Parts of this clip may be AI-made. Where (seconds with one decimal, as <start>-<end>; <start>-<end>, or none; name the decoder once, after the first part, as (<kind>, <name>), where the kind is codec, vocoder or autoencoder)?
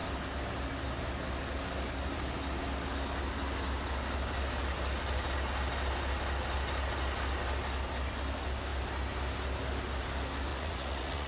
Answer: 10.5-11.3 (vocoder, Vocos)